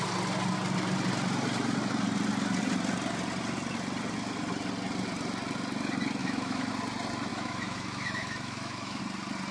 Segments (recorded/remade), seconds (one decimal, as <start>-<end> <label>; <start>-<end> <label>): 0.0-6.2 recorded; 6.2-6.7 remade; 6.7-7.3 recorded; 7.3-9.0 remade; 9.0-9.5 recorded